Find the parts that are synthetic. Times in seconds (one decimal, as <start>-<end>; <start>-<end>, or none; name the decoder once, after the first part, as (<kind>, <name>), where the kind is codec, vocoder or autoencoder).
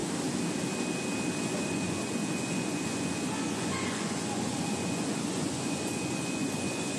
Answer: 1.4-7.0 (vocoder, Vocos)